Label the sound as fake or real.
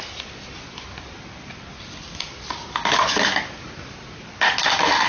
real